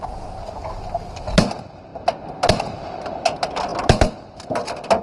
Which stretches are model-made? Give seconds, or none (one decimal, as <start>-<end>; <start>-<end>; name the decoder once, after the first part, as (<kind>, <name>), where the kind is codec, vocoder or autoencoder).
none